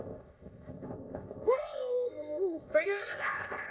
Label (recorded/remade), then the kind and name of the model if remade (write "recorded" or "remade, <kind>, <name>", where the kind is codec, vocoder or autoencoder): remade, codec, ZipCodec